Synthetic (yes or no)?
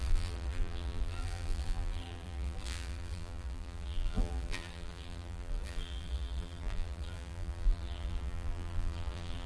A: yes